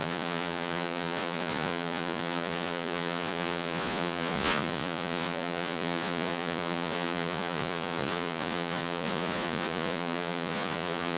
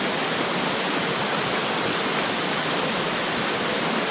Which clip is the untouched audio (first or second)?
second